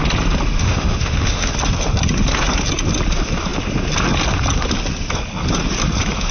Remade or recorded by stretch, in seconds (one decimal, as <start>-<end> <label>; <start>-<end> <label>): 0.0-0.6 recorded; 0.6-1.5 remade; 1.5-6.3 recorded